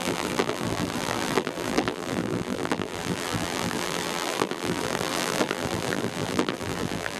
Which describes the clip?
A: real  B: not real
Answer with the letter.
B